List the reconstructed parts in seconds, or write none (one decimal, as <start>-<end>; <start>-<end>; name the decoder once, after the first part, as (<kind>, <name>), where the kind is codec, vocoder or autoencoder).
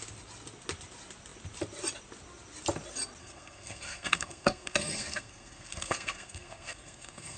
3.2-7.4 (codec, SNAC)